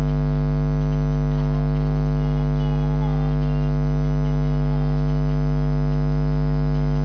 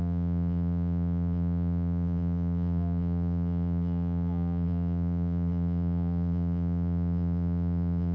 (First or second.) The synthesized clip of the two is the second